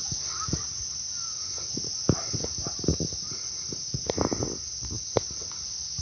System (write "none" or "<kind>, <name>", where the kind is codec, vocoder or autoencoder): none